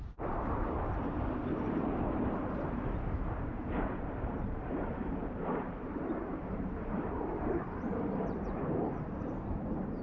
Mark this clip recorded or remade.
remade